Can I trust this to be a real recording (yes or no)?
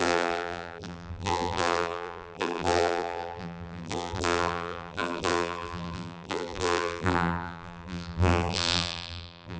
no